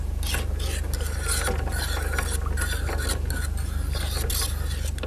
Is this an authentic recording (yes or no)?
yes